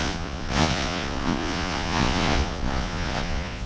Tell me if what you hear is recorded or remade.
remade